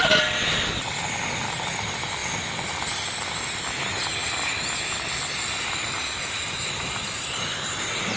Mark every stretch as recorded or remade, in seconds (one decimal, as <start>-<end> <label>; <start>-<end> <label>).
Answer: 0.0-8.2 recorded